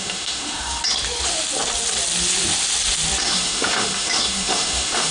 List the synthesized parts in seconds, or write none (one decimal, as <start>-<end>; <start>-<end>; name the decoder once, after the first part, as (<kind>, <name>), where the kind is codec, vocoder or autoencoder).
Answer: 0.0-0.8 (autoencoder, DAC-VAE); 3.2-5.1